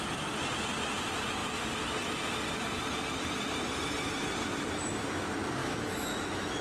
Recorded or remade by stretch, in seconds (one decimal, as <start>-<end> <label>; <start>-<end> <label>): 0.0-5.6 recorded; 5.6-6.6 remade